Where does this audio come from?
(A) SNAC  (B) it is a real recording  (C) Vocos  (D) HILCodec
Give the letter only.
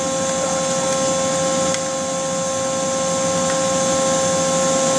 B